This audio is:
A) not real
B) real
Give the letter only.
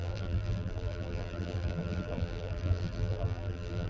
A